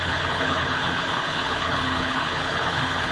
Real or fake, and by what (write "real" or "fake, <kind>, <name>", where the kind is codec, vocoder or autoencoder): fake, codec, HILCodec